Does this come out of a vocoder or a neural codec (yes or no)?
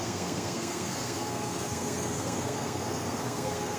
yes